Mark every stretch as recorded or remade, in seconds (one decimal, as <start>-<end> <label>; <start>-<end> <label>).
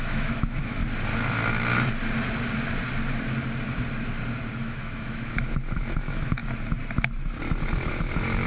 0.0-0.8 remade; 0.8-4.6 recorded; 4.6-6.4 remade; 6.4-7.9 recorded; 7.9-8.5 remade